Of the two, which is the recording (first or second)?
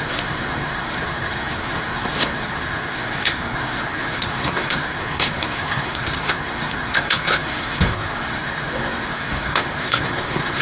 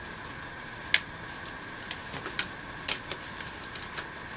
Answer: second